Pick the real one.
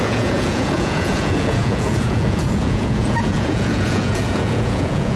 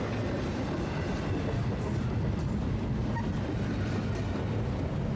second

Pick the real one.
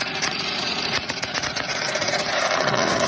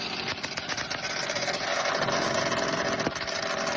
second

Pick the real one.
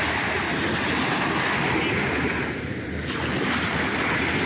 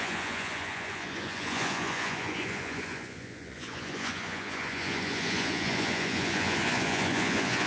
first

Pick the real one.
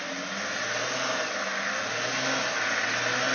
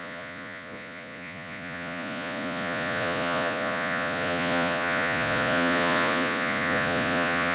first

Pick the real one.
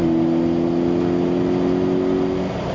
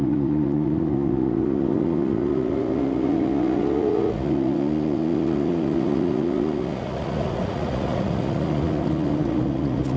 first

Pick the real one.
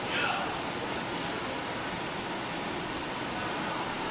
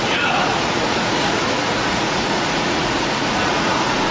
first